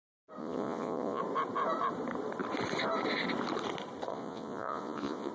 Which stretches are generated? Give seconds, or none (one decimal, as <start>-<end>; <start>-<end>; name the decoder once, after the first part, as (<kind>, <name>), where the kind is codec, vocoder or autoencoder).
0.4-1.2 (vocoder, Vocos); 4.1-5.3